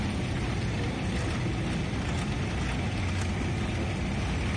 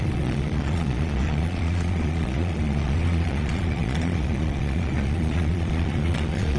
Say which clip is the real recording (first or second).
first